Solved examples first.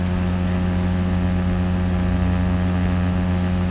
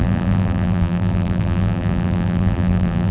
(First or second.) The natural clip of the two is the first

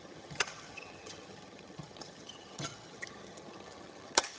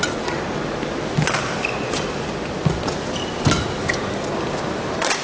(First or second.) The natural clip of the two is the second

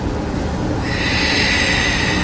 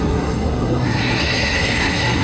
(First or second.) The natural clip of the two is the first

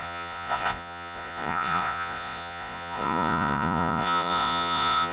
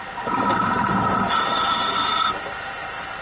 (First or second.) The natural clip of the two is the second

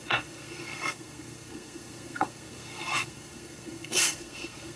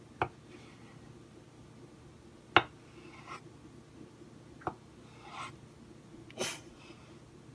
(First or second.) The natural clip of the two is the second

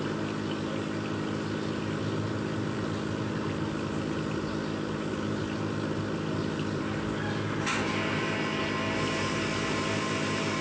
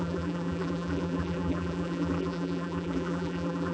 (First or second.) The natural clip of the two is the first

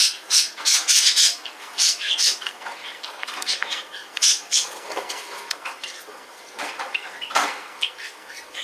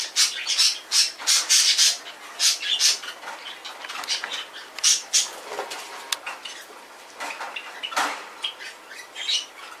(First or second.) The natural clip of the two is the second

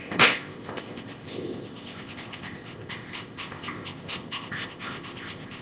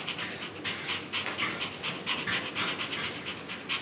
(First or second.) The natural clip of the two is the second